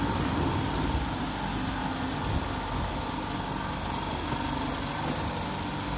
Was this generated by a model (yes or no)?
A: no